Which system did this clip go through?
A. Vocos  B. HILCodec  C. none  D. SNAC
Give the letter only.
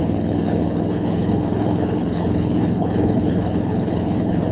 B